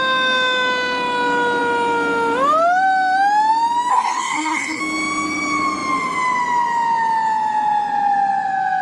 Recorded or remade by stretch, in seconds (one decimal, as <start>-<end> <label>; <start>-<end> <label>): 0.0-3.9 recorded; 3.9-4.8 remade; 4.8-8.8 recorded